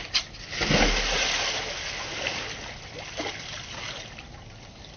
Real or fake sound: real